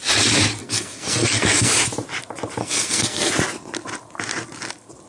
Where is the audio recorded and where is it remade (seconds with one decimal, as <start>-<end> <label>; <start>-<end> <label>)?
0.0-0.6 recorded; 0.6-1.7 remade; 1.7-2.6 recorded; 2.6-3.3 remade; 3.3-5.1 recorded